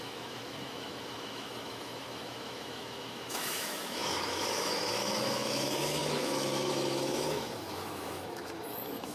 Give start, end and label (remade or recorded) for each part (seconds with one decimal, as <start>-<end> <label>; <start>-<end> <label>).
0.0-9.1 remade